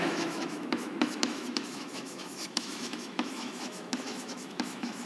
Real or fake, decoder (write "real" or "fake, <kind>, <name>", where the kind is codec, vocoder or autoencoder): fake, autoencoder, DAC-VAE